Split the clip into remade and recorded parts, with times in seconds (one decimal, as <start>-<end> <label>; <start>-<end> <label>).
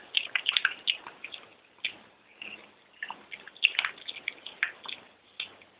0.0-5.8 recorded